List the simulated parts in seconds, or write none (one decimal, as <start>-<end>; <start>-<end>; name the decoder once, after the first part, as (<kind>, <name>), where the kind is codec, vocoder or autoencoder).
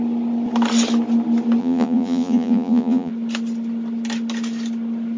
1.6-3.1 (vocoder, Vocos)